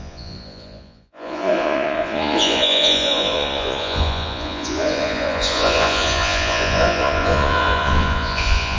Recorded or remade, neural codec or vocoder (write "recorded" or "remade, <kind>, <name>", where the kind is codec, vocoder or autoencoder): remade, vocoder, Vocos